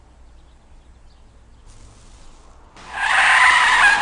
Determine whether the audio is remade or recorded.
recorded